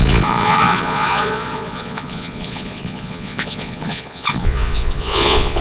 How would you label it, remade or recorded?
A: remade